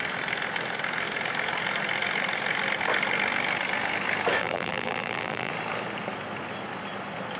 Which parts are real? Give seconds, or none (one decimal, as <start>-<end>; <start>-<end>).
0.0-4.4; 5.5-7.4